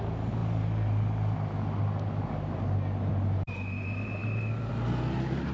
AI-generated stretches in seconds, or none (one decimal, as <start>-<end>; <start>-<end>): none